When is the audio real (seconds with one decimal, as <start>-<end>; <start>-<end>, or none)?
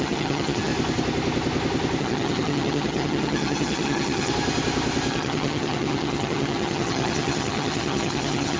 0.7-2.0; 4.3-5.1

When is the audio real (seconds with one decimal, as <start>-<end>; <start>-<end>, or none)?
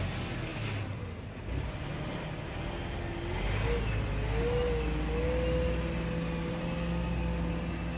0.0-8.0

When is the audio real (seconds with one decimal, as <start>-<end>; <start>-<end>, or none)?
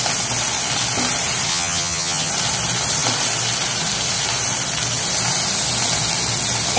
0.0-1.5; 2.3-6.8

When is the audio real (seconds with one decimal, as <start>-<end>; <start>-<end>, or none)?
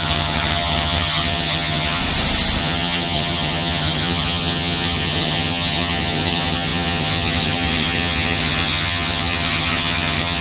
2.0-2.6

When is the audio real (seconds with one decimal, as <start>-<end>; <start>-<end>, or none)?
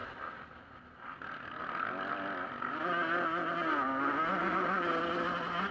0.0-5.7